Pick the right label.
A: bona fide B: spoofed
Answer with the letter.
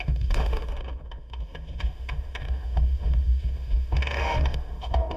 B